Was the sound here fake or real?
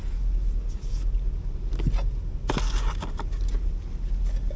real